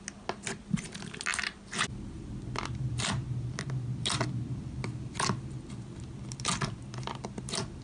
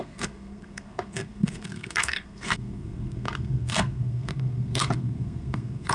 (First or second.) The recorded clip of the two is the first